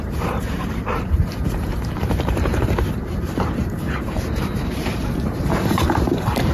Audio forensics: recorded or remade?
remade